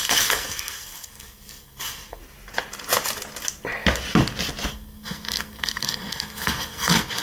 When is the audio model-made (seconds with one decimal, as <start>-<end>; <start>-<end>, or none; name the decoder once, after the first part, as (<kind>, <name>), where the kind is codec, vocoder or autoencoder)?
0.0-2.2 (codec, SNAC); 4.7-7.2